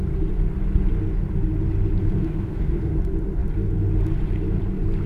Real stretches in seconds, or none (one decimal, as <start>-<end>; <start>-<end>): 0.0-2.0; 3.0-5.1